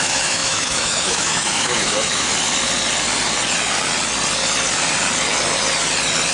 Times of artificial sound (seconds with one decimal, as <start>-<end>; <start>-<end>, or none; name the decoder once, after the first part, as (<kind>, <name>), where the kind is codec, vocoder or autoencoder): 0.0-2.3 (autoencoder, DAC-VAE)